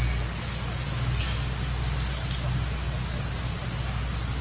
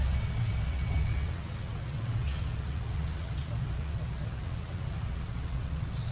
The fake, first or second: second